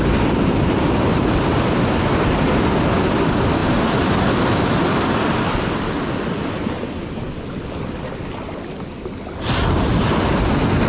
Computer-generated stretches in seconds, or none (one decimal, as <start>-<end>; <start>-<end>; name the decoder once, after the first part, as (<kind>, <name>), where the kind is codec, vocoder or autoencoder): none